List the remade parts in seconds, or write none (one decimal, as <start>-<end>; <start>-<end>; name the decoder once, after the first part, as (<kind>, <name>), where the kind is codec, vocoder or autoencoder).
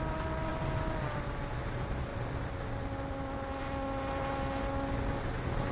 none